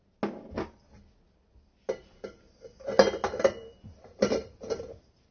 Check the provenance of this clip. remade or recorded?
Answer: recorded